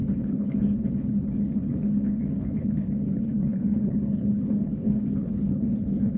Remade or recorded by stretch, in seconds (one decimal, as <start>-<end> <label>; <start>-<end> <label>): 0.0-6.2 remade

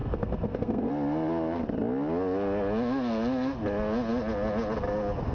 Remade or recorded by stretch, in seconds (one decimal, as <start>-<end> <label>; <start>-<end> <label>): 0.0-0.9 remade; 0.9-5.3 recorded

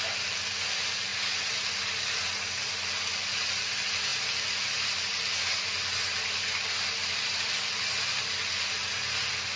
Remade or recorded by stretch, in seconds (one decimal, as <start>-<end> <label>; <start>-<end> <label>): 0.0-9.6 recorded

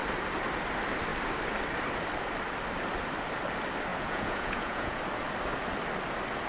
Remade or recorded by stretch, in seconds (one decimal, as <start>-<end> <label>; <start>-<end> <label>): 0.0-3.9 recorded; 3.9-5.0 remade; 5.0-6.5 recorded